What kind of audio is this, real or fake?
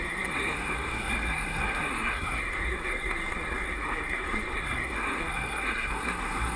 fake